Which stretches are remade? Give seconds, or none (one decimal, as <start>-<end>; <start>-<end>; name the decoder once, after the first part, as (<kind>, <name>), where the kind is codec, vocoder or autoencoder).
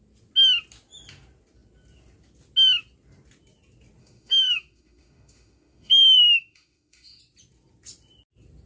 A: 4.0-7.2 (autoencoder, DAC-VAE)